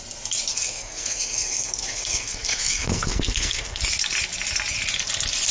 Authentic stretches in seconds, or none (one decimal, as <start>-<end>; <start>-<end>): 0.0-0.5; 3.8-5.5